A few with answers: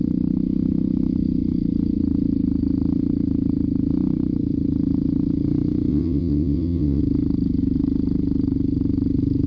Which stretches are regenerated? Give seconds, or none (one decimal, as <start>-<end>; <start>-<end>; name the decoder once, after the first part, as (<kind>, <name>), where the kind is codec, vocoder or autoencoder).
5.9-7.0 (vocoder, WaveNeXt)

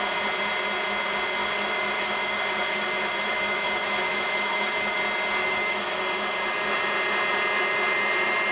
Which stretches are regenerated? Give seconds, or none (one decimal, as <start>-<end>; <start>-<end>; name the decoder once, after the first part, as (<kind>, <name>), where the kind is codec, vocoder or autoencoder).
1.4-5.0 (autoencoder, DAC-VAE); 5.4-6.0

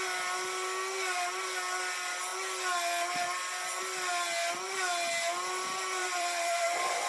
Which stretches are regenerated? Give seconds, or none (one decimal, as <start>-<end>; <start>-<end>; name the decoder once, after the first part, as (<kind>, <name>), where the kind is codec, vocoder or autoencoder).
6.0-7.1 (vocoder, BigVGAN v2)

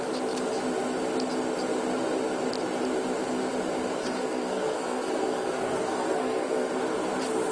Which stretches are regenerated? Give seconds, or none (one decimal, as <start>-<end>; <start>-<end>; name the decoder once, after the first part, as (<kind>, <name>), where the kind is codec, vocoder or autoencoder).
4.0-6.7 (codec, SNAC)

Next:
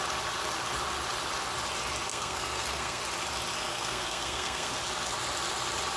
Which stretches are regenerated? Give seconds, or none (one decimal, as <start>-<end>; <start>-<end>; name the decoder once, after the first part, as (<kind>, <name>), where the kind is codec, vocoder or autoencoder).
2.1-3.0 (codec, SNAC); 3.7-4.7